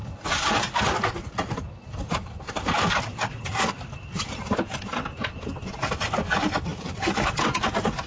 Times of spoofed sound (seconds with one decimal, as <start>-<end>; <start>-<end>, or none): 0.0-0.8; 2.1-5.2; 6.7-7.3